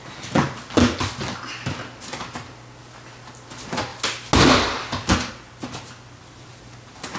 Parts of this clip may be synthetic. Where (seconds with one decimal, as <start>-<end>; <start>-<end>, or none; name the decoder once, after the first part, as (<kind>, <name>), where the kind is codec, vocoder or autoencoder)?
none